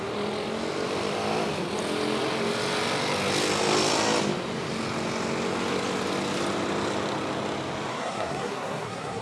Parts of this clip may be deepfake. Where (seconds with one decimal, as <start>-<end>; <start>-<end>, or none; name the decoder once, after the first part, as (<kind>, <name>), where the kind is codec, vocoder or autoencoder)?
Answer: 7.9-9.2 (codec, SNAC)